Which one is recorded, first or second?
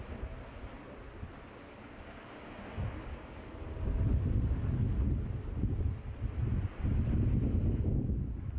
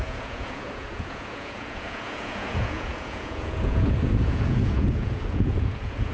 first